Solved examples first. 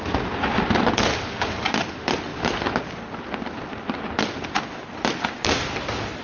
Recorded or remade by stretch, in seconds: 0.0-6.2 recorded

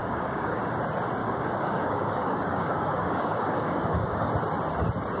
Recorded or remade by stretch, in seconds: 0.0-0.6 remade; 0.6-1.2 recorded; 1.2-4.3 remade; 4.3-5.2 recorded

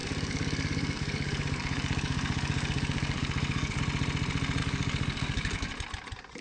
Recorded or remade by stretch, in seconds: 0.0-3.8 remade; 3.8-4.6 recorded; 4.6-5.7 remade; 5.7-6.4 recorded